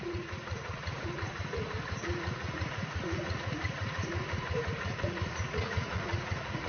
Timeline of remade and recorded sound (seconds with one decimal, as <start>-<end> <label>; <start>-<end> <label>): 0.0-6.7 remade